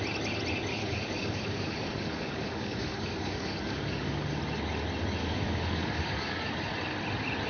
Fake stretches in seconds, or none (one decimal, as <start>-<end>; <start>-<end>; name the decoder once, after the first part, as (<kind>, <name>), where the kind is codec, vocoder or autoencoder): 0.7-4.4 (codec, DAC); 5.2-6.5